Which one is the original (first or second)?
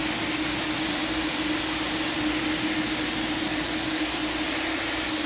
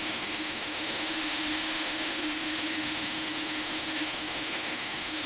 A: first